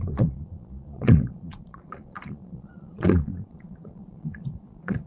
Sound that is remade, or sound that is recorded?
remade